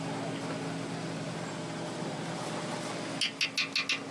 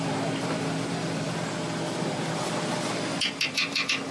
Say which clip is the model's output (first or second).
second